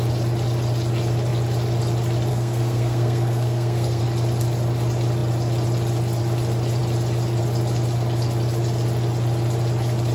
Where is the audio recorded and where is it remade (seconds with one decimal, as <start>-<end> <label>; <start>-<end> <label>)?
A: 0.0-2.3 recorded; 2.3-4.0 remade; 4.0-10.1 recorded